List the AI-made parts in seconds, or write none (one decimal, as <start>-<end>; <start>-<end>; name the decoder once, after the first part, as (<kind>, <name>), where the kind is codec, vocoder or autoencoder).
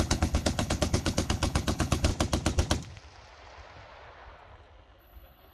0.0-2.1 (codec, HILCodec); 5.0-5.5